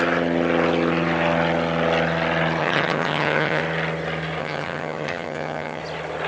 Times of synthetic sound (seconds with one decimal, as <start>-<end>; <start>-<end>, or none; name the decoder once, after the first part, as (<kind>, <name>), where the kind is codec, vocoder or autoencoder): 2.6-3.6 (vocoder, HiFi-GAN); 4.4-5.8

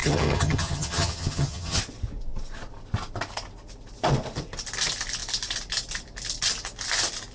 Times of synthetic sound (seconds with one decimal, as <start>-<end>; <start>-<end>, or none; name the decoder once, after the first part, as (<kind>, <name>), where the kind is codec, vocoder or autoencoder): 0.0-1.8 (vocoder, HiFi-GAN)

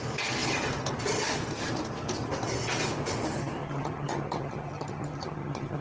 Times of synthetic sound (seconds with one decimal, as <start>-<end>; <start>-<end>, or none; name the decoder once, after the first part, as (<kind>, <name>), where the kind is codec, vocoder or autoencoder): 3.6-5.8 (vocoder, HiFi-GAN)

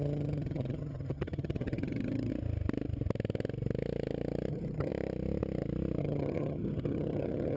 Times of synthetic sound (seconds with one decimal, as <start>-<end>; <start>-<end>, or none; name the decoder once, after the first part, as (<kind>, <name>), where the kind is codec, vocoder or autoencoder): 0.0-2.3 (vocoder, HiFi-GAN); 4.5-4.9; 6.0-7.6

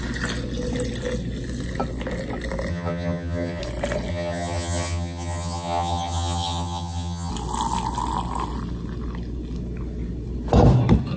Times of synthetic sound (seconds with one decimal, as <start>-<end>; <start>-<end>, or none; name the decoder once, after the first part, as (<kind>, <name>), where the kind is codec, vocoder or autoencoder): 2.7-3.6 (vocoder, HiFi-GAN); 4.1-7.3

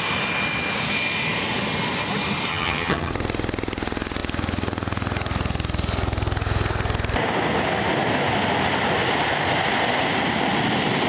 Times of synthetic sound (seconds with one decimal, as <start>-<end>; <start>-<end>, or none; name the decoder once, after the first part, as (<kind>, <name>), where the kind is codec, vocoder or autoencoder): 2.5-3.1 (vocoder, HiFi-GAN)

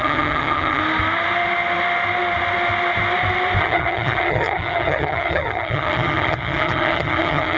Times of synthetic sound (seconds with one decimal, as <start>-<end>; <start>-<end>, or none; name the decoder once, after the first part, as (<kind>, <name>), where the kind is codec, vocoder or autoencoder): 0.0-0.8 (vocoder, HiFi-GAN); 3.6-7.6